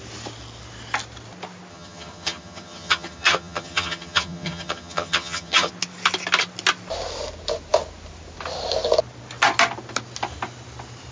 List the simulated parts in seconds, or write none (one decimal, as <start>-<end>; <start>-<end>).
1.7-5.7